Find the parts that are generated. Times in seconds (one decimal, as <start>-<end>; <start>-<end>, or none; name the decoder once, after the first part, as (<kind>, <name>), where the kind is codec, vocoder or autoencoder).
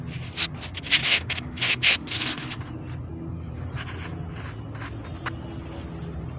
1.0-2.6 (autoencoder, DAC-VAE)